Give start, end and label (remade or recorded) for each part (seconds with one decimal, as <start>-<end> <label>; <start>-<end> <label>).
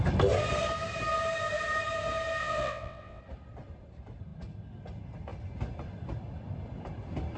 0.0-2.4 recorded; 2.4-3.2 remade; 3.2-7.4 recorded